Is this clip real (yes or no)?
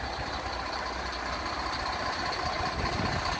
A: yes